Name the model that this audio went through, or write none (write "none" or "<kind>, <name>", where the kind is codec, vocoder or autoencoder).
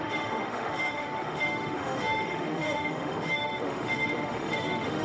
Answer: autoencoder, DAC-VAE